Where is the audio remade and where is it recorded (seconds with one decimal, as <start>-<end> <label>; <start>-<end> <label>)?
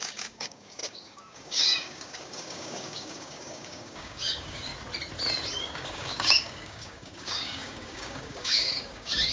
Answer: 0.0-4.7 remade; 4.7-5.6 recorded; 5.6-9.3 remade